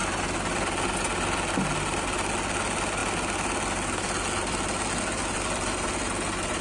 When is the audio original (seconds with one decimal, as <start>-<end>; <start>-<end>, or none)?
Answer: 0.0-6.6